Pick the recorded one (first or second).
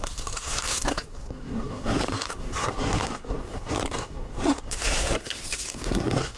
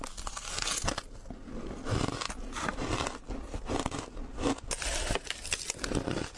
second